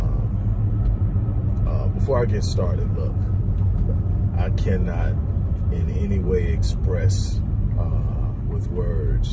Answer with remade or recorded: recorded